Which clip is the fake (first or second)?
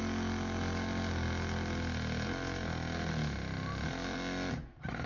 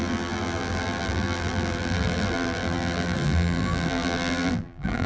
second